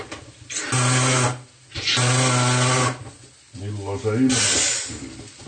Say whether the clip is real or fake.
real